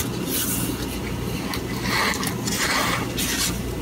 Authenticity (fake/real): real